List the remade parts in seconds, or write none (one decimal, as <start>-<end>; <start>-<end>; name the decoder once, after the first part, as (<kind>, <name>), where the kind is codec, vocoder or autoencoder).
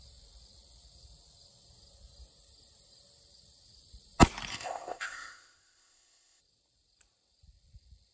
4.5-6.4 (codec, ZipCodec)